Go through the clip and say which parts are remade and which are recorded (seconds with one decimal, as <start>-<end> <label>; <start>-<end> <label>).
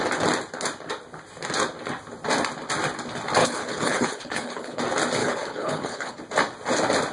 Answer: 0.0-3.4 recorded; 3.4-4.8 remade; 4.8-5.2 recorded; 5.2-6.2 remade; 6.2-7.1 recorded